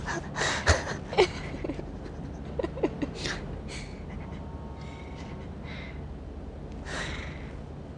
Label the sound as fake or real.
real